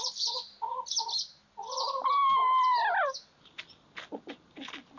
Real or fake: real